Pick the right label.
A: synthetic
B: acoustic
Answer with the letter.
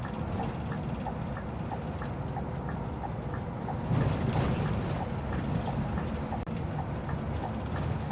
B